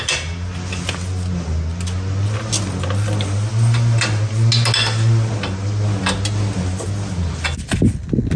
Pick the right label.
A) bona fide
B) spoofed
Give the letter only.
A